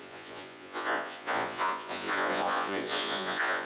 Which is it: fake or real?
fake